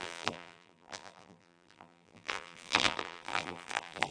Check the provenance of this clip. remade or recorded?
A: remade